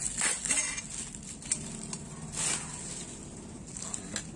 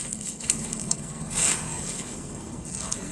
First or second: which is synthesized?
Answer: second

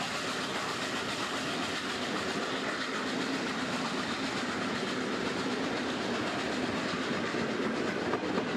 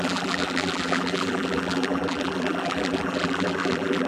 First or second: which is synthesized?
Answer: second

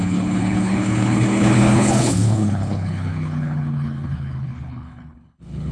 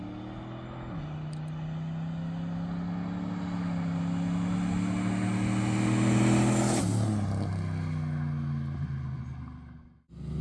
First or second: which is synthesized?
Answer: first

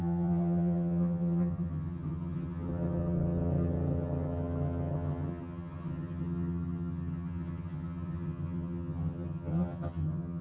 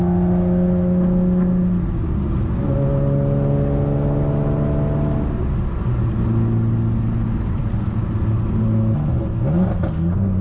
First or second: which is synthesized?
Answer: first